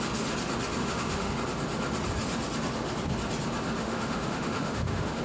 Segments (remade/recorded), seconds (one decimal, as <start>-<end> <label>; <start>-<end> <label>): 0.0-0.8 recorded; 0.8-1.3 remade; 1.3-3.8 recorded; 3.8-5.2 remade